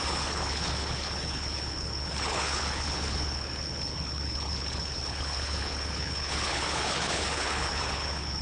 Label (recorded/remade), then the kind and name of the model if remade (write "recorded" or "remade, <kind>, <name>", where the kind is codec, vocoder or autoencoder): remade, codec, HILCodec